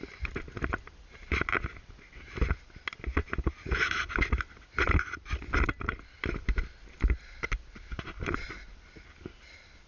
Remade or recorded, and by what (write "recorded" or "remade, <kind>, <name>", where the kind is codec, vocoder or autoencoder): recorded